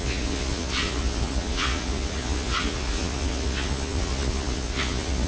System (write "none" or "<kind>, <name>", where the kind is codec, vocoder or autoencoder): vocoder, Vocos